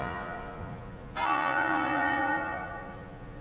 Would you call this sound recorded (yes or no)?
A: no